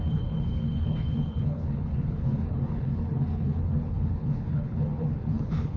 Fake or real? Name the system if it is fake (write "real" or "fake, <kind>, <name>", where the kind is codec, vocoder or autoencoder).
fake, codec, HILCodec